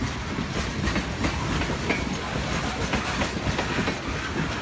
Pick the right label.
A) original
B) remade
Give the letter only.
A